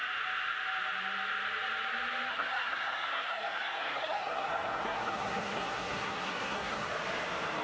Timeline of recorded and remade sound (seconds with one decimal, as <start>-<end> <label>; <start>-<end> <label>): 0.0-2.3 recorded; 2.3-6.9 remade; 6.9-7.6 recorded